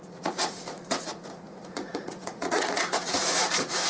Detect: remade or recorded remade